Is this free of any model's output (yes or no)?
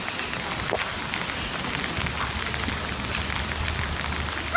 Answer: yes